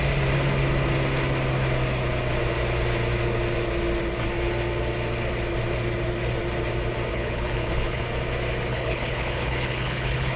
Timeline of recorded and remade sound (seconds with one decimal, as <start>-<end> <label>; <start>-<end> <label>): 0.0-7.1 recorded; 7.1-8.0 remade; 8.0-8.7 recorded; 8.7-10.4 remade